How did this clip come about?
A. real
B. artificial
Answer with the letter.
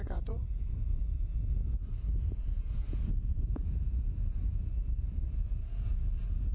B